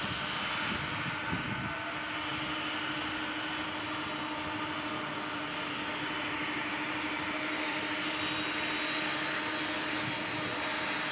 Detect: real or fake real